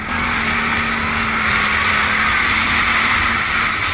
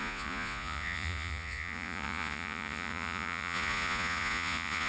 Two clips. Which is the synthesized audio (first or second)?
second